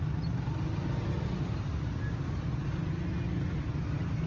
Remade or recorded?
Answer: recorded